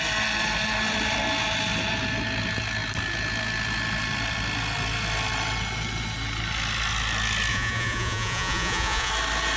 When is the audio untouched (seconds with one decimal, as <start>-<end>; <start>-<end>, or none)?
0.0-7.5; 9.1-9.6